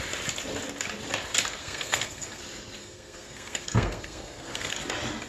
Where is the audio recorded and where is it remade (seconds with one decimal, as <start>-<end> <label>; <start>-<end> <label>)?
0.0-1.6 recorded; 1.6-2.4 remade; 2.4-2.8 recorded; 2.8-4.7 remade; 4.7-5.3 recorded